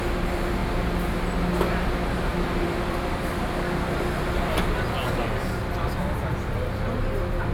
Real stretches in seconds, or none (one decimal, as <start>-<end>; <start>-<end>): 0.0-2.3; 3.0-7.5